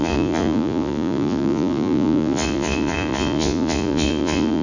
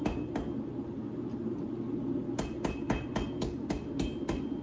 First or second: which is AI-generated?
first